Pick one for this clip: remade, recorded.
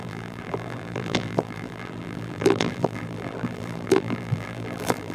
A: remade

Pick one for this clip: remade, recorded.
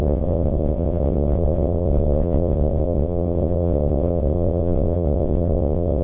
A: remade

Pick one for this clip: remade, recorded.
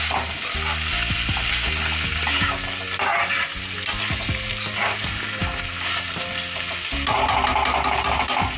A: recorded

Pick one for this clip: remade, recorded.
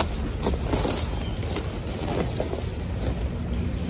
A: recorded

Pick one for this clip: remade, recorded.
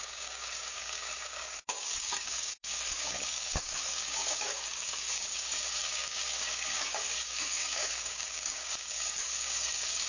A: remade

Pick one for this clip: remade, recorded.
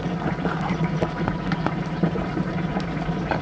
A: remade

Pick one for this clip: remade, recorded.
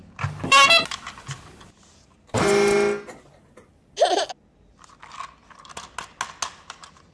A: recorded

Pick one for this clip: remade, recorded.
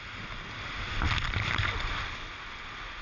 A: recorded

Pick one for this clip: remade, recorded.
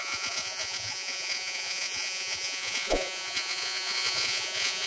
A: remade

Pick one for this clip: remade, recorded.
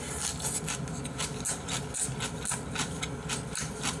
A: recorded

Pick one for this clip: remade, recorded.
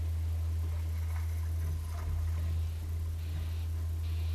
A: recorded